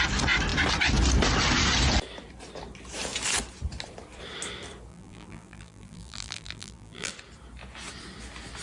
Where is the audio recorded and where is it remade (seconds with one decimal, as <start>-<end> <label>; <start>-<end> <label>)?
0.0-4.9 recorded; 4.9-7.1 remade; 7.1-8.6 recorded

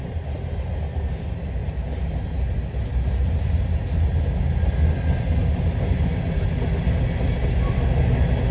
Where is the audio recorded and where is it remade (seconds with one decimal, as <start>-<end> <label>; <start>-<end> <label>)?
0.0-8.5 recorded

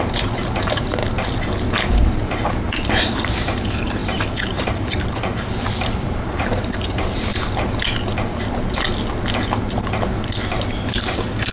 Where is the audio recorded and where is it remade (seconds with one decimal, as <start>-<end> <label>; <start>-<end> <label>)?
0.0-1.0 remade; 1.0-1.9 recorded; 1.9-7.3 remade; 7.3-10.9 recorded; 10.9-11.5 remade

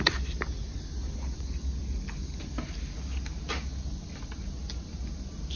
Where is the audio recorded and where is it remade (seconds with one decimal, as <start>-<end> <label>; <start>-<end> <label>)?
0.0-5.6 recorded

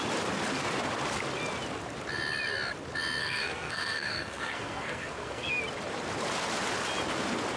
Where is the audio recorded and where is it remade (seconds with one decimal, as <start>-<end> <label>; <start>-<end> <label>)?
0.0-3.2 recorded; 3.2-5.6 remade; 5.6-7.6 recorded

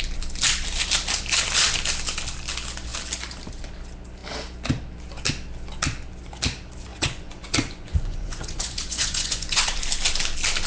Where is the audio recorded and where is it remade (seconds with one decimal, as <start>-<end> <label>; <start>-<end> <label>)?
0.0-6.9 recorded; 6.9-9.6 remade; 9.6-10.7 recorded

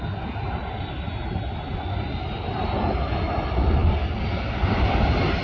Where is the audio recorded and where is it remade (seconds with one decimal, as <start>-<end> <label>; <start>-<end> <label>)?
0.0-5.4 recorded